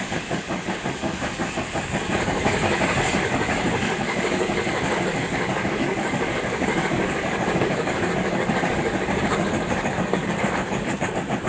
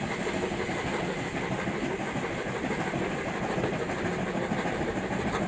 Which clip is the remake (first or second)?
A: first